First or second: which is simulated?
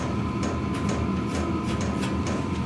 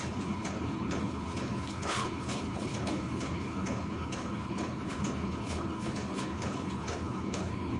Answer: second